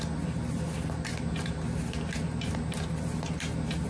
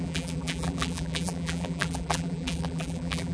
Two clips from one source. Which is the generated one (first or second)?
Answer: second